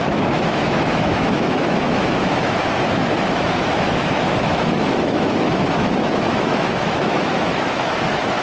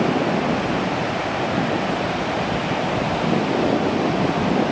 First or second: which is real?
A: second